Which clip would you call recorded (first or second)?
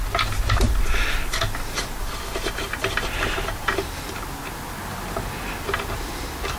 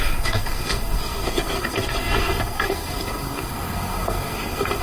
first